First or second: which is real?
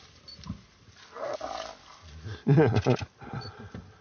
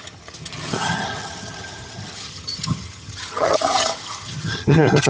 first